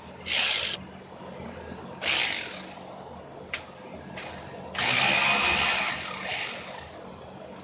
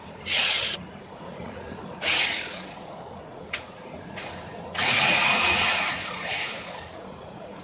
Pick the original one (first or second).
first